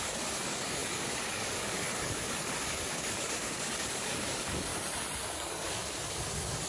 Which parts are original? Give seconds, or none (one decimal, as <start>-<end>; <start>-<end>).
4.7-5.2